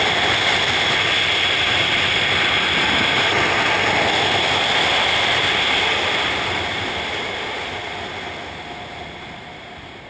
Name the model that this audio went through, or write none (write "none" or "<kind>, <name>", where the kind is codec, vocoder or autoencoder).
none